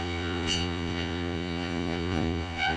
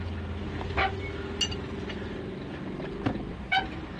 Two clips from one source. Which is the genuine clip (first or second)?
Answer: second